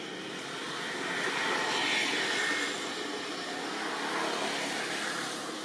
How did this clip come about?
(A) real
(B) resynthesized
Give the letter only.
A